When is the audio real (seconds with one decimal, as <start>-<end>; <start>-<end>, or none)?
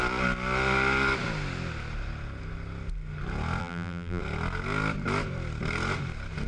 0.0-3.6; 4.2-6.5